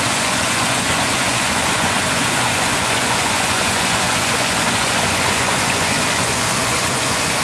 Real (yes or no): no